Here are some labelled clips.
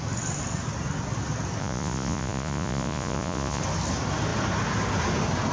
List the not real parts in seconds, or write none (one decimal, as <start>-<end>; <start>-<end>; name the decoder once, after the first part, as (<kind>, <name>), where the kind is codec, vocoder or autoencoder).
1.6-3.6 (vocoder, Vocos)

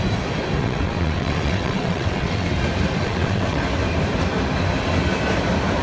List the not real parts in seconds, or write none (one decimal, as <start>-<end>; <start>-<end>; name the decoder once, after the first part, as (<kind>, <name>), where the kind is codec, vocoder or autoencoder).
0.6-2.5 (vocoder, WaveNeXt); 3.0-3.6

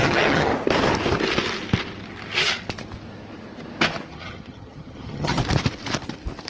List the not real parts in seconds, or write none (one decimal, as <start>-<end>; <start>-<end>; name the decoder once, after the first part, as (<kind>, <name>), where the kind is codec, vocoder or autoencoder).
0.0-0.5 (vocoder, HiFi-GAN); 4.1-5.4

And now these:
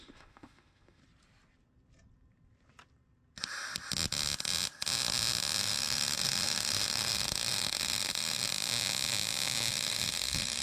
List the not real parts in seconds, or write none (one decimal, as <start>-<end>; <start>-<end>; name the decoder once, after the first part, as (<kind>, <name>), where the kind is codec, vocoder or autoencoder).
0.0-1.0 (autoencoder, DAC-VAE); 5.6-8.5; 9.7-10.6

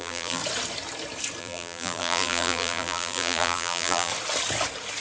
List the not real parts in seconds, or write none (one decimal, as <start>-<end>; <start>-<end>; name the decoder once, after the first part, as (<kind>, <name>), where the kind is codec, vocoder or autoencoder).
0.0-0.4 (vocoder, BigVGAN v2); 1.4-4.1